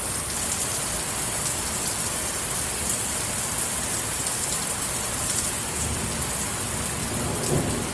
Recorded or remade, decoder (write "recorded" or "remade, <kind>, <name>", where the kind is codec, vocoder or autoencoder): recorded